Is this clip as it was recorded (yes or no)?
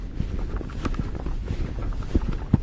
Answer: yes